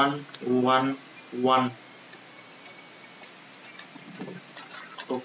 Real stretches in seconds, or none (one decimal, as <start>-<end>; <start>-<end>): 0.0-5.2